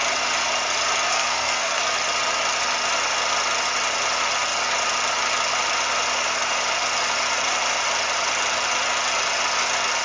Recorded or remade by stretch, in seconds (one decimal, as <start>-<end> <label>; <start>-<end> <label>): 0.0-1.1 recorded; 1.1-1.8 remade; 1.8-10.0 recorded

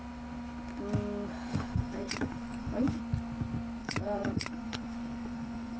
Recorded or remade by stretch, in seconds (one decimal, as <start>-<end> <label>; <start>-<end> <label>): 0.0-1.5 recorded; 1.5-3.0 remade; 3.0-3.8 recorded; 3.8-5.8 remade